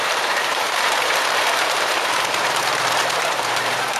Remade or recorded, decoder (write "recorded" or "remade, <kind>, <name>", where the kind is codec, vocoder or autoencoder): remade, vocoder, BigVGAN v2